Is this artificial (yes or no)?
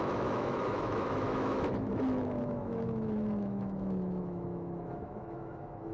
yes